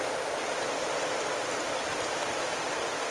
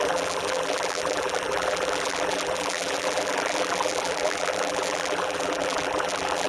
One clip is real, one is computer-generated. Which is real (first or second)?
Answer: first